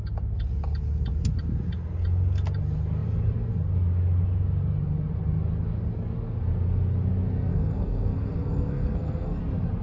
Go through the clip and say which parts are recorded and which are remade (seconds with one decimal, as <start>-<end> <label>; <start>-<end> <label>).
0.0-7.5 recorded; 7.5-9.4 remade; 9.4-9.8 recorded